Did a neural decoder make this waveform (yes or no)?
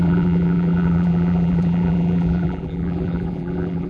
yes